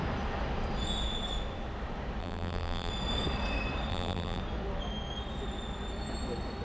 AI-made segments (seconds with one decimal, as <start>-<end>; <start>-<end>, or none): 2.2-2.9; 3.9-4.4